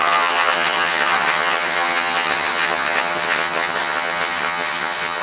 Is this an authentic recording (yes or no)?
no